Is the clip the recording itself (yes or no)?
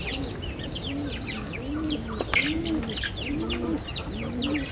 yes